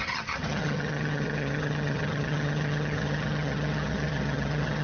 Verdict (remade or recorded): remade